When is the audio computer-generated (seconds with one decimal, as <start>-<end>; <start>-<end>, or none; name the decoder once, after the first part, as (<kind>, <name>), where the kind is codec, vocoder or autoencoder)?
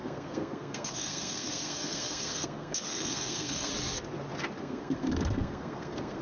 0.0-3.7 (codec, SNAC); 4.6-6.2